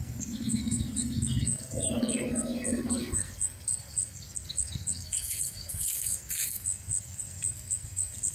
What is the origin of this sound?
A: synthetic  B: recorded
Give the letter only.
A